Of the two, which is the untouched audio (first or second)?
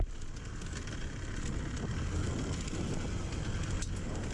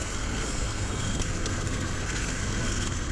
first